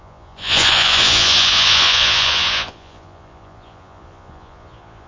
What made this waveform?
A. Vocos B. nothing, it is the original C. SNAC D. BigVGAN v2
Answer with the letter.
A